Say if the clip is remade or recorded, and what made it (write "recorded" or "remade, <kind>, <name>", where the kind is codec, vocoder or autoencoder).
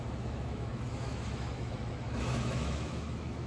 remade, autoencoder, DAC-VAE